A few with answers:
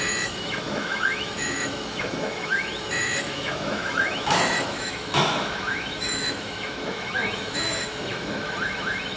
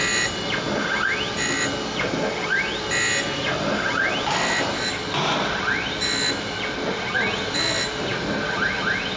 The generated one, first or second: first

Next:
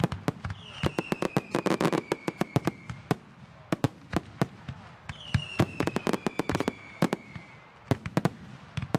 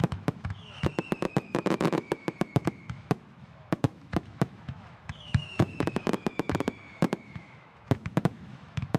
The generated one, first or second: second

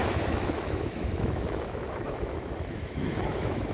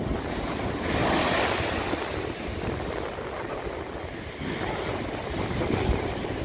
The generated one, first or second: first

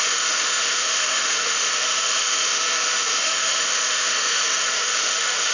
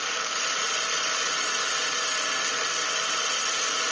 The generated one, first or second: first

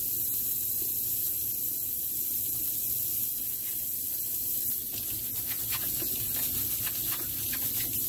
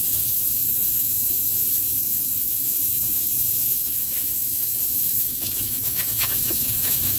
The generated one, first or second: second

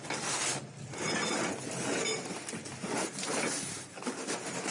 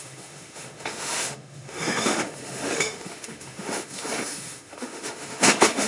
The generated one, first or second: second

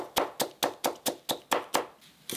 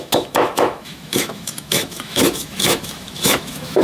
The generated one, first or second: second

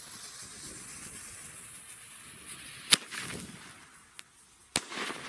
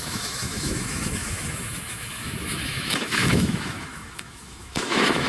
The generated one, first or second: second